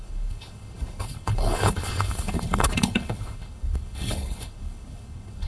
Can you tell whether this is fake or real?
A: fake